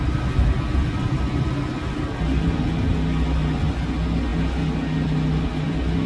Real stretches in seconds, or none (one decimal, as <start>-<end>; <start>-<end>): 0.0-6.1

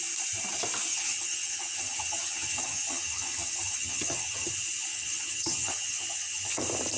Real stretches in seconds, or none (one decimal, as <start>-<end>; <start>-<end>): 0.0-0.9; 4.5-4.9; 6.6-7.0

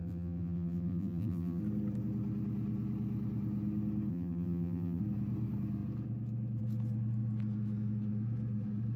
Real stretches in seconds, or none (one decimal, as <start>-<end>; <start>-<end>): 1.6-4.1; 5.0-9.0

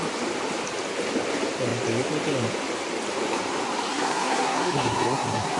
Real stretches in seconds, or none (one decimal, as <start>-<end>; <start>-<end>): 0.0-3.9

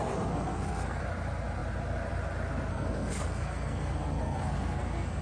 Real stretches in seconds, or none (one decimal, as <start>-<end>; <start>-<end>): 1.0-2.7

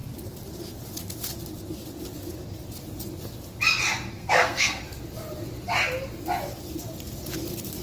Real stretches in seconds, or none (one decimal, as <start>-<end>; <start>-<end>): 0.0-4.1; 4.8-7.8

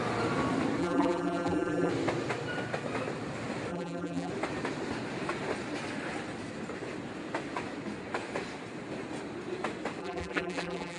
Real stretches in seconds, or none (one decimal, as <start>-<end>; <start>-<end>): 0.0-0.8; 1.9-3.7; 4.3-10.0